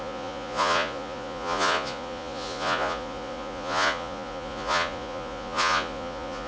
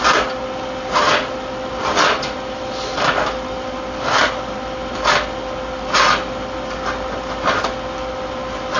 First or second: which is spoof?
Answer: first